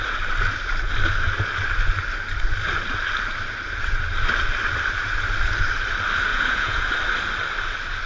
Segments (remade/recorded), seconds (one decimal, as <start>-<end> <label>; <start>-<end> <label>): 0.0-6.3 recorded; 6.3-6.9 remade; 6.9-8.1 recorded